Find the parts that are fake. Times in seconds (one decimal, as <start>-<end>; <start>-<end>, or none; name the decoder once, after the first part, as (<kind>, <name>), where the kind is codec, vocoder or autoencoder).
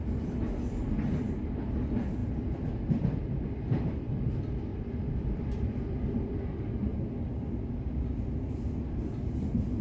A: 2.2-3.6 (vocoder, BigVGAN v2); 4.7-6.4